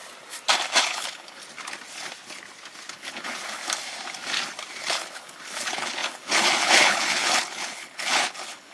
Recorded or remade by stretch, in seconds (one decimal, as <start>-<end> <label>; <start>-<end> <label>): 0.0-0.8 recorded; 0.8-1.4 remade; 1.4-2.9 recorded; 2.9-3.6 remade; 3.6-4.8 recorded; 4.8-8.7 remade